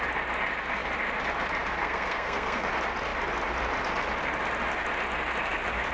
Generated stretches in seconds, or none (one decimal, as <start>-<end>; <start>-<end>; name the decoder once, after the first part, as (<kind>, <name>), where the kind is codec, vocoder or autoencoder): 1.8-2.7 (codec, SNAC)